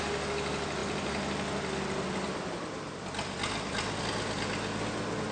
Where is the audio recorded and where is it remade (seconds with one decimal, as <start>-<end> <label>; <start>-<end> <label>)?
0.0-5.3 recorded